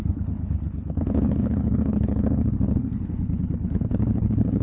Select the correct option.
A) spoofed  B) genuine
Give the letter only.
A